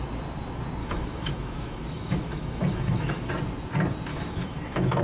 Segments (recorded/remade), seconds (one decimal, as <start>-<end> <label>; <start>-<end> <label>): 0.0-0.8 recorded; 0.8-3.3 remade; 3.3-4.1 recorded; 4.1-5.0 remade